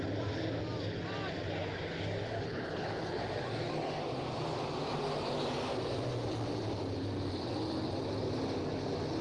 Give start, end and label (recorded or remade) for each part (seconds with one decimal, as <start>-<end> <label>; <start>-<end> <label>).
0.0-2.4 recorded; 2.4-3.2 remade; 3.2-9.2 recorded